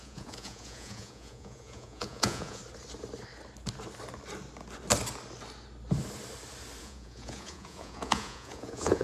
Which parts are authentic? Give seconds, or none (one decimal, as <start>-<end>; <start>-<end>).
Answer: 2.6-6.8